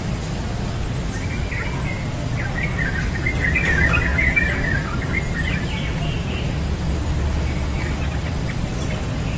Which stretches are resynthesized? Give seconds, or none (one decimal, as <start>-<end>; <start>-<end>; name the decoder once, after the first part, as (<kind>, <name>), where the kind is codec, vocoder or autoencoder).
none